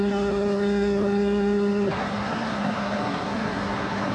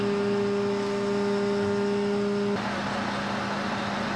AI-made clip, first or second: first